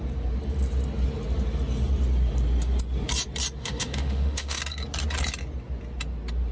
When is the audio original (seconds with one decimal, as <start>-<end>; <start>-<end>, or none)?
0.0-3.6; 4.6-6.5

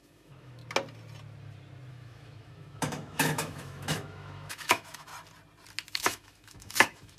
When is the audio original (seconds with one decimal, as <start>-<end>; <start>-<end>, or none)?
0.6-1.9; 5.1-5.9

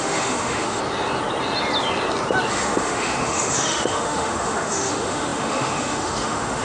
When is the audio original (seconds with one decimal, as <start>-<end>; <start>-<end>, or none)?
0.8-2.5

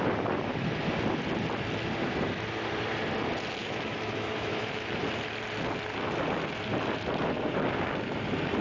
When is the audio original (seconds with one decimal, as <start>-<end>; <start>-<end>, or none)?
0.0-3.6; 5.0-8.6

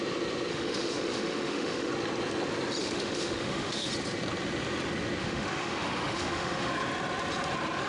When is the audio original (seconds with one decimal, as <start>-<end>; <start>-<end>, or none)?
0.0-0.5; 1.9-2.8; 3.9-5.2; 6.7-7.9